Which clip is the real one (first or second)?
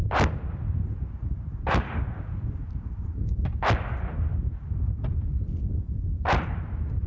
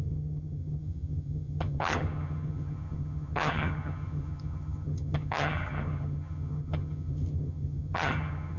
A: first